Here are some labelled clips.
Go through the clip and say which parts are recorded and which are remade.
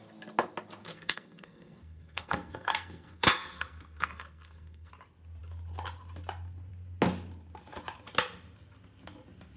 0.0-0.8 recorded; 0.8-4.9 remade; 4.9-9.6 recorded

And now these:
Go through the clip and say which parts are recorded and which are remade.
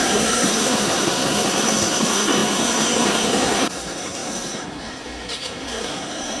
0.0-6.4 remade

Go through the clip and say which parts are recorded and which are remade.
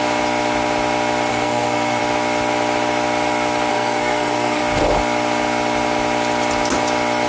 0.0-1.3 recorded; 1.3-2.0 remade; 2.0-3.7 recorded; 3.7-4.6 remade; 4.6-7.3 recorded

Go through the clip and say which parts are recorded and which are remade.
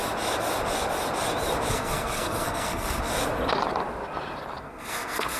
0.0-1.7 recorded; 1.7-3.1 remade; 3.1-4.6 recorded; 4.6-5.4 remade